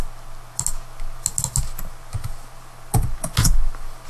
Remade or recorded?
recorded